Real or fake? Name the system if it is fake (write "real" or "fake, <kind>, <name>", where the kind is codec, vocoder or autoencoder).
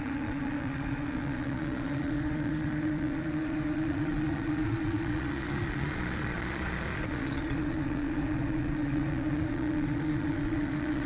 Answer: fake, vocoder, Vocos